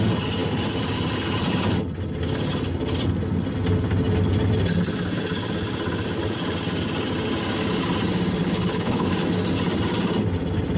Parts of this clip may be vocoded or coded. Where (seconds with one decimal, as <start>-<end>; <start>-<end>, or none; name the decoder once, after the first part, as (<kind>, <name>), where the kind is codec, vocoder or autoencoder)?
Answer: 8.4-9.1 (codec, HILCodec)